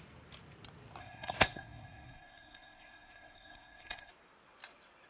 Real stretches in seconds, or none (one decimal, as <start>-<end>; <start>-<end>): 0.0-1.0; 4.1-5.1